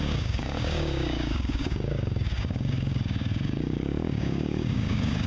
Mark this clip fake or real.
fake